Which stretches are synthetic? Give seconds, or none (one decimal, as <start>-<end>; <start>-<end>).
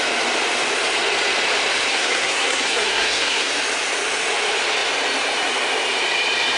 1.9-3.5